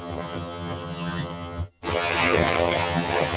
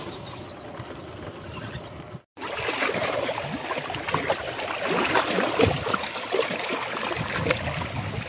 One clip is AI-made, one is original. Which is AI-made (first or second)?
first